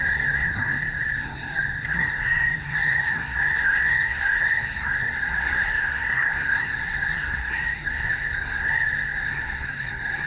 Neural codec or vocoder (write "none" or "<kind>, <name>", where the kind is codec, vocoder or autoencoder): codec, SNAC